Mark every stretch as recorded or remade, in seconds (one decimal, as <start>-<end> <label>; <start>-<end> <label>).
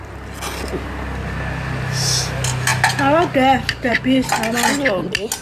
0.0-5.4 recorded